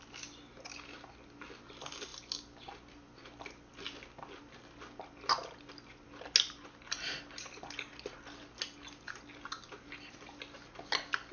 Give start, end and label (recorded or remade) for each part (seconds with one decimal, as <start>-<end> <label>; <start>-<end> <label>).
0.0-11.3 recorded